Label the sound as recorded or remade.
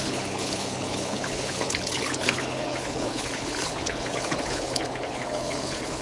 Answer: remade